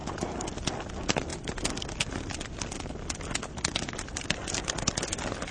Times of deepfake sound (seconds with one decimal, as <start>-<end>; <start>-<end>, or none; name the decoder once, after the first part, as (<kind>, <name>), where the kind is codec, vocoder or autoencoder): none